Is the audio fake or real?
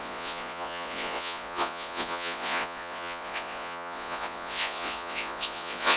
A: fake